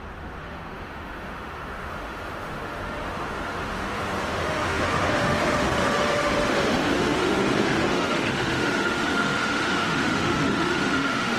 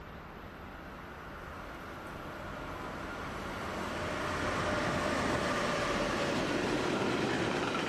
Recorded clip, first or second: second